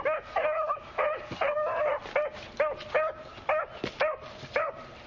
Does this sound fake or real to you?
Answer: real